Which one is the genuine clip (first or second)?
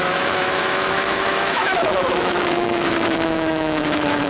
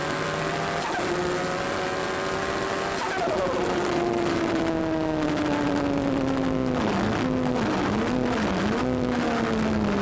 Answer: second